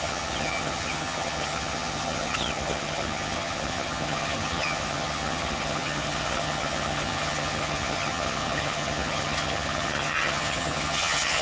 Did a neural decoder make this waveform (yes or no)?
yes